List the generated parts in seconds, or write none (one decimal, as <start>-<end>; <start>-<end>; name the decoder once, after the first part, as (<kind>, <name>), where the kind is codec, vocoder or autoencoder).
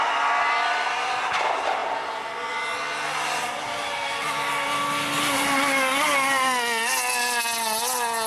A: none